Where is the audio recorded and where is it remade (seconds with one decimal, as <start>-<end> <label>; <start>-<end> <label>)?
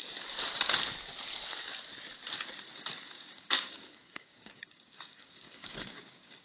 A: 0.0-3.1 recorded; 3.1-6.4 remade